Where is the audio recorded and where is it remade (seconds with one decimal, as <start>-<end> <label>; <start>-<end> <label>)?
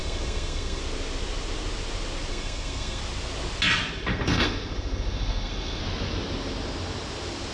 0.0-0.8 remade; 0.8-2.3 recorded; 2.3-3.0 remade; 3.0-4.1 recorded; 4.1-5.8 remade; 5.8-7.5 recorded